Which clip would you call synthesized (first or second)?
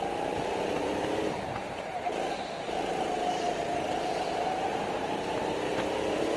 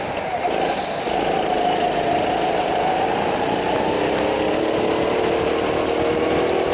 first